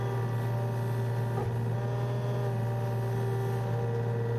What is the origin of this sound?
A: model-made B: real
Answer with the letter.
B